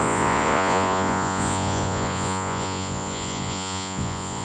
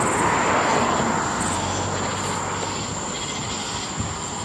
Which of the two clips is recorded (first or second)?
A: second